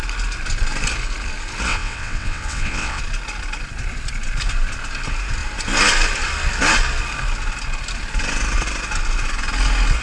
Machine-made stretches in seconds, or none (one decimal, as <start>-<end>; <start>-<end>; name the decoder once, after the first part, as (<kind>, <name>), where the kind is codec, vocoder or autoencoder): 1.7-3.0 (vocoder, WaveNeXt)